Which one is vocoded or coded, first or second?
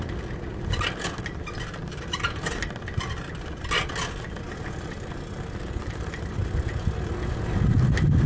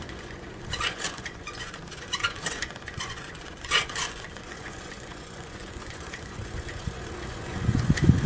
second